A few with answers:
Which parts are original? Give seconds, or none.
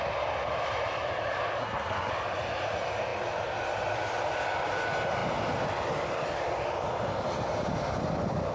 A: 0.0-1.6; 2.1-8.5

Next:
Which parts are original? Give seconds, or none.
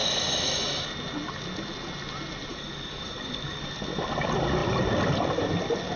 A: 0.0-2.5; 3.6-6.0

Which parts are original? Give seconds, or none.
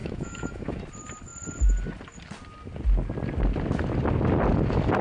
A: 0.8-5.0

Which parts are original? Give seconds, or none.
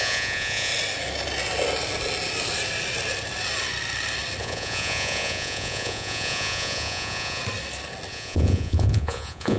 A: 0.7-4.4; 7.4-8.1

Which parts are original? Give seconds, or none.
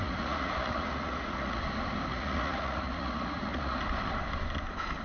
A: 1.6-2.1; 3.8-5.0